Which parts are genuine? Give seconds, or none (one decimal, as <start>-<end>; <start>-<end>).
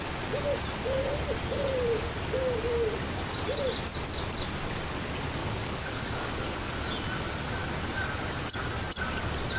0.0-5.4; 6.7-9.6